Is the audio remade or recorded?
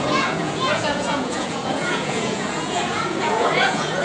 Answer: remade